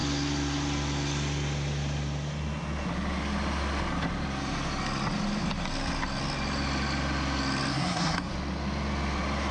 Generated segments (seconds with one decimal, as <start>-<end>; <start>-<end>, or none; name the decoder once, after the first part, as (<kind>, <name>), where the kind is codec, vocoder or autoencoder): 7.7-8.3 (codec, SNAC)